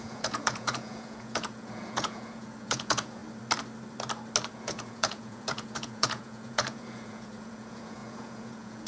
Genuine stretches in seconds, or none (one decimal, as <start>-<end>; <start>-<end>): 3.2-4.5